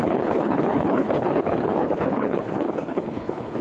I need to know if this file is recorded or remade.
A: remade